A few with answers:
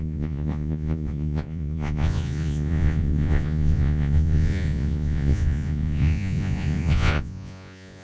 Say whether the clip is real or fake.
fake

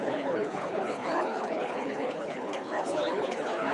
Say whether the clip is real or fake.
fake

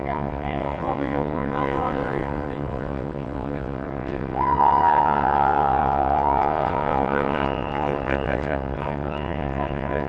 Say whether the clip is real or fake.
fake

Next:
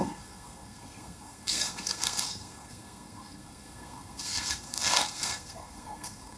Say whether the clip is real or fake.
fake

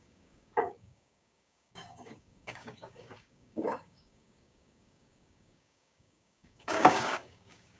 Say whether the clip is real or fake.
fake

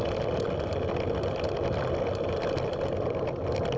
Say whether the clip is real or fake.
real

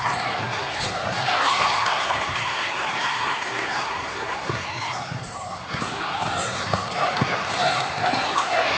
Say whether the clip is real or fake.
fake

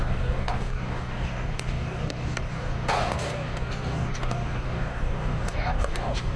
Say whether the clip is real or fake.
fake